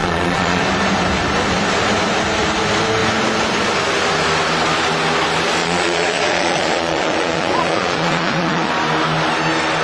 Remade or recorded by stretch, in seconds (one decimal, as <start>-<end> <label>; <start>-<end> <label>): 0.0-0.6 remade; 0.6-5.6 recorded; 5.6-8.7 remade; 8.7-9.8 recorded